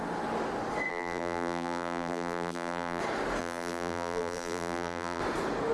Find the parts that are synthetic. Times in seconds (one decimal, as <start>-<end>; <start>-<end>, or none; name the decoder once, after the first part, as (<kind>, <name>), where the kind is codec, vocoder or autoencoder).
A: 0.9-3.0 (vocoder, BigVGAN v2); 3.4-5.2